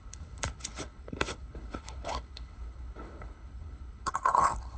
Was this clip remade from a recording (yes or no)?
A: yes